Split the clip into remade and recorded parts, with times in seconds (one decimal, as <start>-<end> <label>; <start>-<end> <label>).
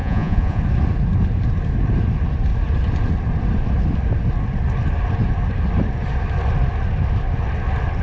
0.0-0.6 remade; 0.6-8.0 recorded